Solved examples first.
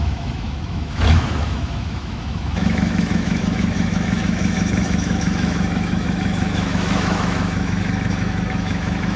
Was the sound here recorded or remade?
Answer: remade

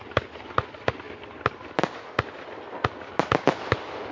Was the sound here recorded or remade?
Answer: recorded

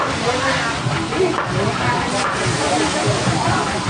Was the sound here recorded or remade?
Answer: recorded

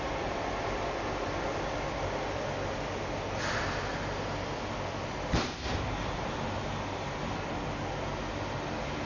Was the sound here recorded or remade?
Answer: recorded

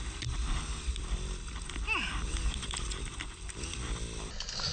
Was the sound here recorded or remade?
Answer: recorded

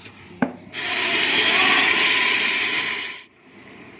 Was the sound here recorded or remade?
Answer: remade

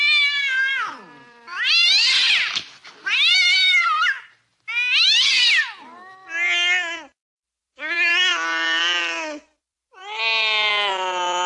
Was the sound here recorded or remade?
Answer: recorded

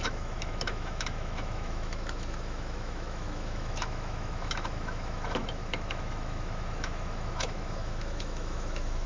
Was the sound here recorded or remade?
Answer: remade